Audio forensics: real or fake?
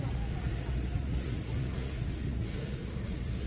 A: fake